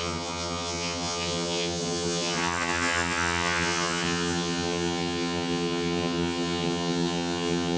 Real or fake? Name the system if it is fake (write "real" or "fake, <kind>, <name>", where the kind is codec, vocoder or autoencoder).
fake, vocoder, HiFi-GAN